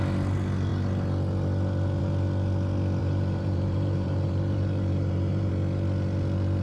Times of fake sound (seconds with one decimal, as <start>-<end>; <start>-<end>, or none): 3.0-5.5